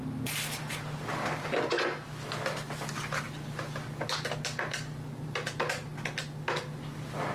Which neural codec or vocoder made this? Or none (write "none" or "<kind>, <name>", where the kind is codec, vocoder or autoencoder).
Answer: none